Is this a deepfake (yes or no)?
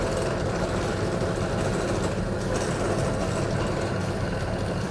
no